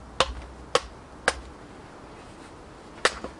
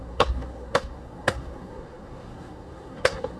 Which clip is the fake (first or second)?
second